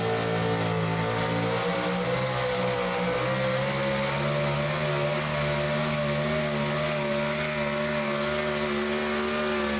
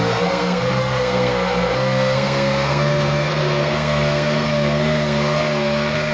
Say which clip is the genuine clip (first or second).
first